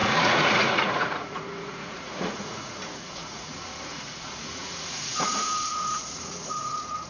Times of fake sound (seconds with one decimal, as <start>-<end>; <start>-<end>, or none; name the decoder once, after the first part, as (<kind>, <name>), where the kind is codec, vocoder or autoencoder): 0.0-7.1 (vocoder, Vocos)